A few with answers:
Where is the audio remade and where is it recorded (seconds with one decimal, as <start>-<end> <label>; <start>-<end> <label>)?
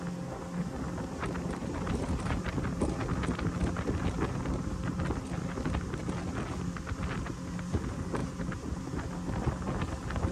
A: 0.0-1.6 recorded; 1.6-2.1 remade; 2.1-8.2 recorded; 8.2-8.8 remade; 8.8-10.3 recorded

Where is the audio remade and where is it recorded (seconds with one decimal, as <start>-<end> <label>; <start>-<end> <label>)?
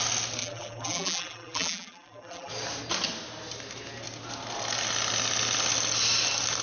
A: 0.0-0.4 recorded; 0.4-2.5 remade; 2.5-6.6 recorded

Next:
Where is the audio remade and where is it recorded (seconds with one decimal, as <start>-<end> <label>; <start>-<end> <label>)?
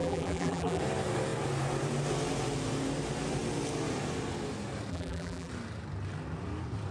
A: 0.0-0.8 remade; 0.8-4.9 recorded; 4.9-5.5 remade; 5.5-6.9 recorded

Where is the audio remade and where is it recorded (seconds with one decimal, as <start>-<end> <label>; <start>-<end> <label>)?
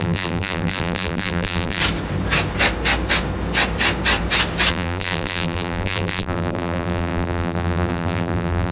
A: 0.0-1.8 remade; 1.8-4.7 recorded; 4.7-8.7 remade